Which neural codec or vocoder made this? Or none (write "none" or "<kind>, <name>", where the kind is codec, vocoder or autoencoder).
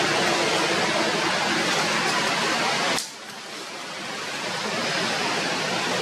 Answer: none